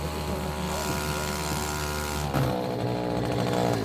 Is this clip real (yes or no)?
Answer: yes